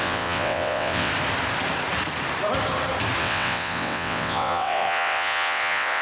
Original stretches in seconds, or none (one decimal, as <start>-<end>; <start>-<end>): 1.1-3.2